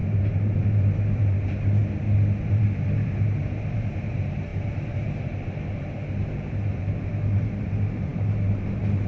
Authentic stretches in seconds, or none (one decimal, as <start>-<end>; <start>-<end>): 1.8-2.4